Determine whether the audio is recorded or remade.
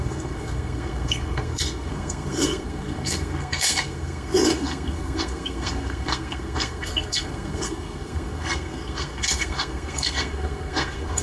remade